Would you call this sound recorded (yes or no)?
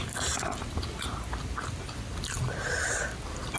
yes